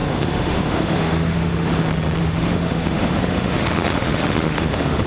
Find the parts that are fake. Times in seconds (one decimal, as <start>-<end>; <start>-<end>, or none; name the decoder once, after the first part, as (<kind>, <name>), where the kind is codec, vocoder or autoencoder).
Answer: 0.0-1.8 (autoencoder, DAC-VAE); 2.2-5.1